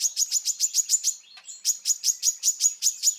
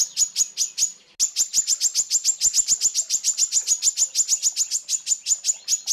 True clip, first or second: second